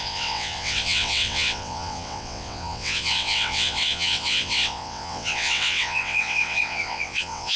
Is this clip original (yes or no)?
no